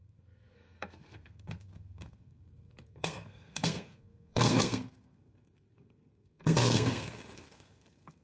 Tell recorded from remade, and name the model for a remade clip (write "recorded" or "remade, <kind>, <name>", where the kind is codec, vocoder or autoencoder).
remade, codec, SNAC